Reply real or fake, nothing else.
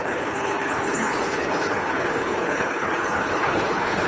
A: fake